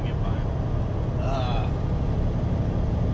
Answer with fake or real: real